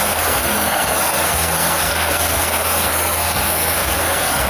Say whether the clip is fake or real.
fake